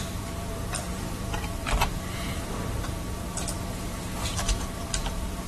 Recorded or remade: remade